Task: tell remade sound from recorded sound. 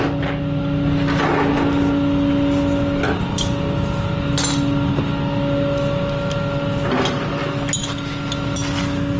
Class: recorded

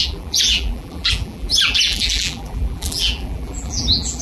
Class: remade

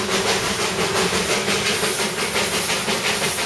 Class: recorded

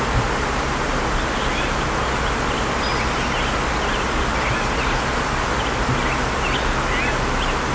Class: recorded